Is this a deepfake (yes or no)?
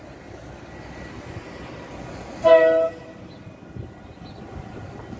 no